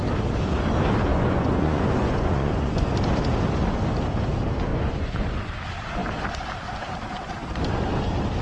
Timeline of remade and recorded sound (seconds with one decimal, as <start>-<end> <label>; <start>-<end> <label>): 0.0-1.1 recorded; 1.1-2.9 remade; 2.9-4.7 recorded; 4.7-5.5 remade; 5.5-8.4 recorded